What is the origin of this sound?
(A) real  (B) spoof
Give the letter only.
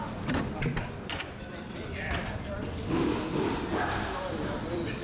B